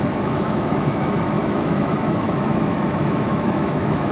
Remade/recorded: remade